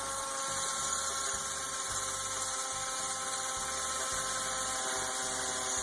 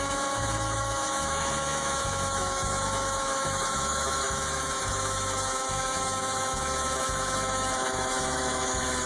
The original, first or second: first